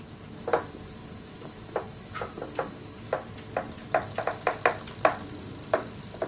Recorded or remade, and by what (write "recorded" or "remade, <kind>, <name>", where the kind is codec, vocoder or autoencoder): recorded